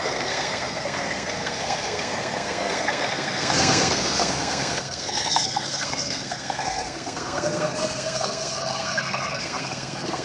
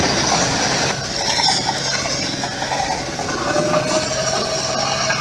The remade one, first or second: first